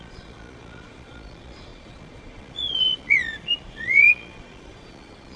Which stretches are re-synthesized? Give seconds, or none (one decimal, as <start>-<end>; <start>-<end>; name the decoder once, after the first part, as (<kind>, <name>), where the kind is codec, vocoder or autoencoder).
0.0-5.4 (vocoder, Vocos)